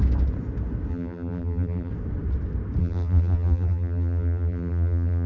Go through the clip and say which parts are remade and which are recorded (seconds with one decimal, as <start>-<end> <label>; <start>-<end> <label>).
0.0-0.9 recorded; 0.9-1.9 remade; 1.9-2.8 recorded; 2.8-5.3 remade